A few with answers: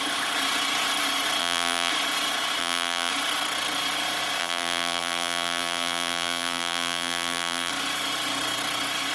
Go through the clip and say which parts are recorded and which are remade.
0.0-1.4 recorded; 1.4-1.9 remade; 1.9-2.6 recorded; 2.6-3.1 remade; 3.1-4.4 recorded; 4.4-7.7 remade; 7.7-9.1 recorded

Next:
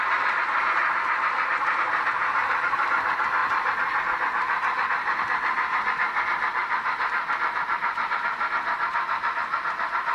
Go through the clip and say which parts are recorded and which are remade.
0.0-3.4 recorded; 3.4-5.2 remade; 5.2-6.6 recorded; 6.6-8.1 remade; 8.1-10.1 recorded

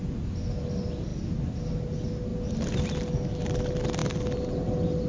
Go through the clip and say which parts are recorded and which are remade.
0.0-5.1 recorded

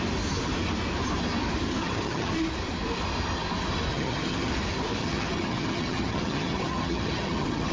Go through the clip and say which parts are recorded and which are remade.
0.0-1.8 recorded; 1.8-2.3 remade; 2.3-3.9 recorded; 3.9-4.5 remade; 4.5-5.0 recorded; 5.0-7.7 remade

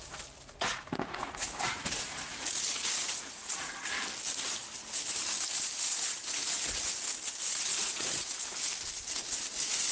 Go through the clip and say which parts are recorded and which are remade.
0.0-0.9 recorded; 0.9-4.0 remade; 4.0-5.9 recorded; 5.9-6.7 remade; 6.7-7.7 recorded; 7.7-8.3 remade; 8.3-9.9 recorded

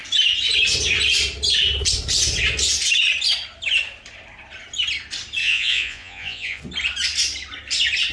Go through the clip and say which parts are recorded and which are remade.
0.0-5.4 recorded; 5.4-6.6 remade; 6.6-8.1 recorded

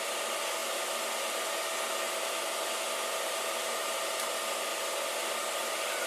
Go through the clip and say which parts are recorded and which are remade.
0.0-6.1 recorded

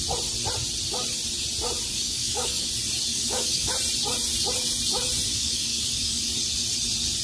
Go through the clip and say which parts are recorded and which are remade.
0.0-1.9 recorded; 1.9-2.7 remade; 2.7-3.1 recorded; 3.1-3.7 remade; 3.7-5.3 recorded; 5.3-6.2 remade; 6.2-7.2 recorded